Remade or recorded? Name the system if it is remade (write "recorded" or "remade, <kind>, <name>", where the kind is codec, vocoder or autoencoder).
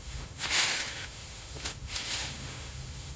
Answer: remade, autoencoder, DAC-VAE